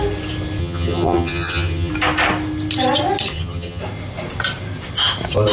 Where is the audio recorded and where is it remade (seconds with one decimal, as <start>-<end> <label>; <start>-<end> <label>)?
0.0-0.6 recorded; 0.6-1.9 remade; 1.9-3.3 recorded; 3.3-3.8 remade; 3.8-5.5 recorded